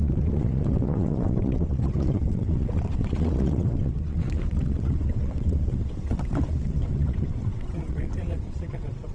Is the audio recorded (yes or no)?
no